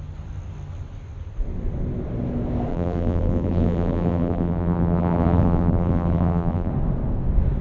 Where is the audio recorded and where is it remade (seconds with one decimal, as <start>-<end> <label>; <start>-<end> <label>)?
0.0-2.7 recorded; 2.7-6.7 remade; 6.7-7.6 recorded